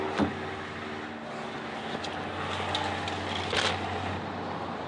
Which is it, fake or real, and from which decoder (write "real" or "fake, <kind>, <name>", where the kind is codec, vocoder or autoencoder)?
real